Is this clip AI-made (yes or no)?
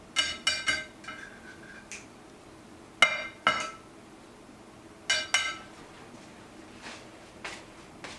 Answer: no